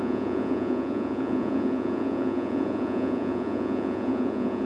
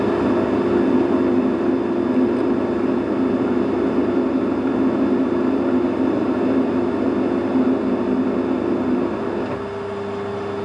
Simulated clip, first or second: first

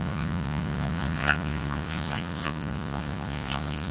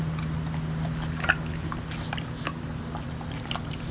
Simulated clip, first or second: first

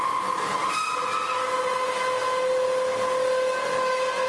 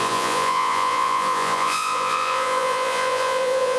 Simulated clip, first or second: second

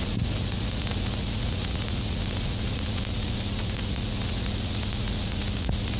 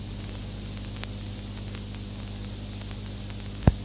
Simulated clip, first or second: first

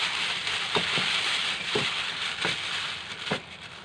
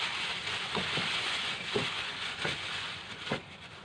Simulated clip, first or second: second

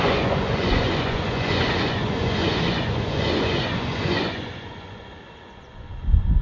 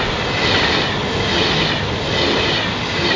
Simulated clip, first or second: first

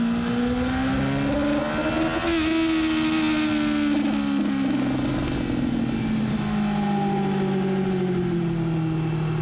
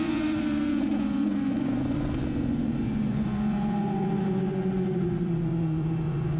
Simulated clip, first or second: second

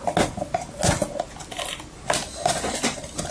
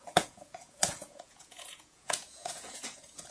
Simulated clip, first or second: second